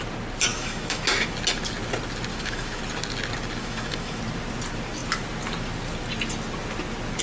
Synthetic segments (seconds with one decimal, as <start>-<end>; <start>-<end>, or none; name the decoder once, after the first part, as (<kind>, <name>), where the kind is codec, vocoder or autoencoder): 0.5-1.0 (autoencoder, DAC-VAE); 2.3-2.8; 3.6-4.2